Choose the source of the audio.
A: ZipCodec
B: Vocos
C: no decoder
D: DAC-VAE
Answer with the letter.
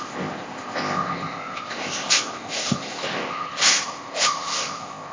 A